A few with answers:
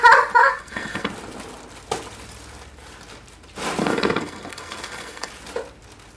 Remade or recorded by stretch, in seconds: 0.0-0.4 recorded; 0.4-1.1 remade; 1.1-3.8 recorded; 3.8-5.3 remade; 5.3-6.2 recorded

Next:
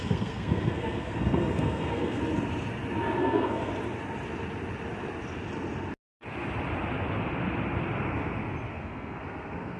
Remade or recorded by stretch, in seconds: 0.0-2.2 remade; 2.2-3.2 recorded; 3.2-3.7 remade; 3.7-8.7 recorded; 8.7-9.8 remade

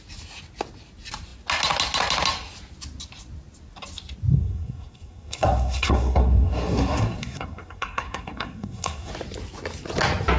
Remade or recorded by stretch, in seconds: 0.0-4.3 recorded; 4.3-9.1 remade; 9.1-10.4 recorded

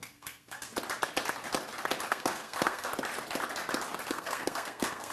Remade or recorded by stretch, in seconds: 0.0-0.7 remade; 0.7-2.1 recorded; 2.1-2.9 remade; 2.9-4.1 recorded; 4.1-5.1 remade

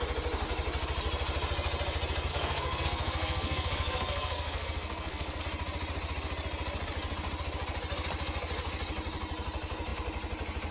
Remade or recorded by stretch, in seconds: 0.0-2.3 recorded; 2.3-5.4 remade; 5.4-10.7 recorded

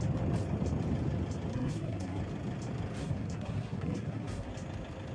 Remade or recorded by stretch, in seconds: 0.0-1.5 recorded; 1.5-2.2 remade; 2.2-3.0 recorded; 3.0-4.5 remade; 4.5-5.1 recorded